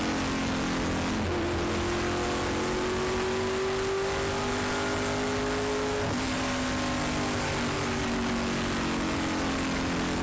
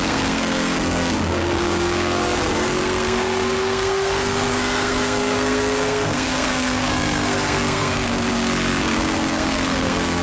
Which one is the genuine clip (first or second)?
first